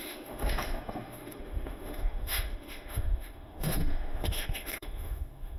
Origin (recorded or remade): remade